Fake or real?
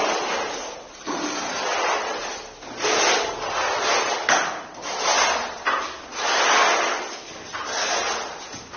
real